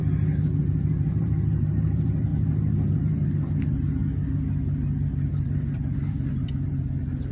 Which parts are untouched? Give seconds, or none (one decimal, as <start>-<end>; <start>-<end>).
0.0-0.6; 4.0-5.3